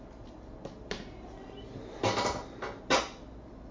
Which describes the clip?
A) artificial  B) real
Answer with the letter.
B